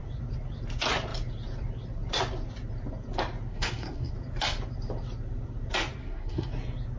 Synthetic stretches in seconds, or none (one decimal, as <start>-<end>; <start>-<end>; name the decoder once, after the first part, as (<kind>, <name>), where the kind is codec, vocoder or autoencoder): 3.5-4.1 (codec, SNAC); 6.0-6.5